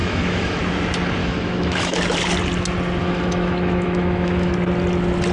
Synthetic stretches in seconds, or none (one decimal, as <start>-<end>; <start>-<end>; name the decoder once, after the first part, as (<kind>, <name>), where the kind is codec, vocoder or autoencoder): 0.0-0.6 (autoencoder, DAC-VAE); 1.2-2.0; 3.0-4.5